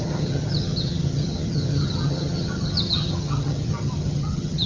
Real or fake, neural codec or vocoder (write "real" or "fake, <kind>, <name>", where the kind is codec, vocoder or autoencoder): fake, vocoder, HiFi-GAN